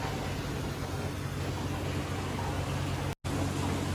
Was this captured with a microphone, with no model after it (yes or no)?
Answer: yes